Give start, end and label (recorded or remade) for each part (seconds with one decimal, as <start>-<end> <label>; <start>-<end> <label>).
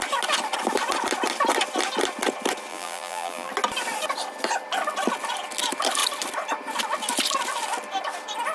0.0-2.7 recorded; 2.7-3.5 remade; 3.5-8.5 recorded